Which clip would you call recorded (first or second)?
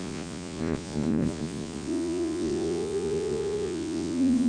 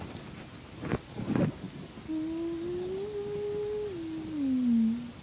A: second